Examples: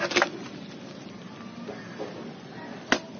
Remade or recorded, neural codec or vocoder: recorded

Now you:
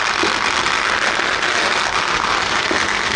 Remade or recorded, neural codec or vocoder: recorded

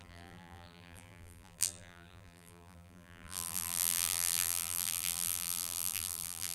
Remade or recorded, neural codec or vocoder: remade, vocoder, BigVGAN v2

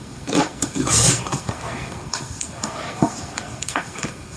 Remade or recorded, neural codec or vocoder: remade, codec, SNAC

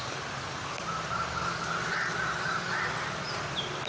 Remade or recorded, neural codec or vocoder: recorded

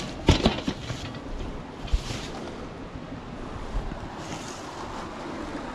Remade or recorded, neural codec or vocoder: recorded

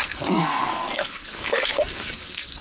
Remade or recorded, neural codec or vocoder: remade, codec, SNAC